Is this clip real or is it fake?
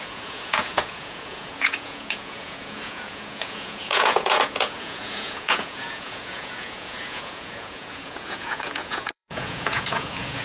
fake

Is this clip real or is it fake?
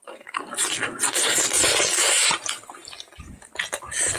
real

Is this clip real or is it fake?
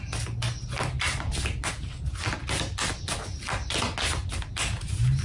real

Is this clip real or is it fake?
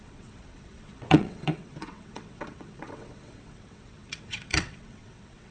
fake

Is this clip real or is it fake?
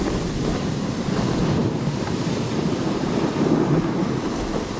real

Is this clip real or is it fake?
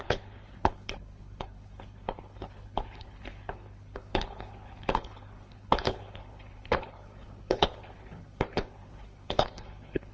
fake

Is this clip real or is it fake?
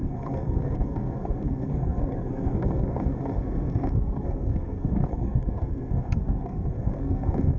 fake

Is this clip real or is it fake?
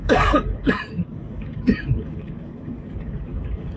fake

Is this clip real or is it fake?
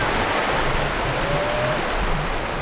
real